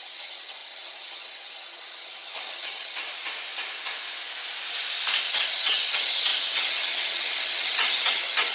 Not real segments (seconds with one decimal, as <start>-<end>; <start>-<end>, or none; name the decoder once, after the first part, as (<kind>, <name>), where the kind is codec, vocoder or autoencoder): 0.0-3.0 (vocoder, HiFi-GAN); 5.3-8.5